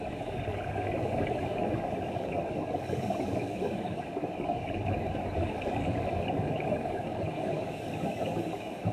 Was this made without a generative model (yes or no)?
no